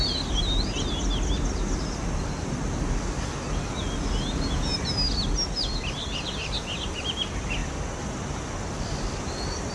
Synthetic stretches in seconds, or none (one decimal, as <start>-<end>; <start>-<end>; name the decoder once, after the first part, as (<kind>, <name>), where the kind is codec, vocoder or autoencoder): none